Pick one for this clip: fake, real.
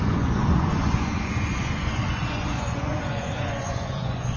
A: fake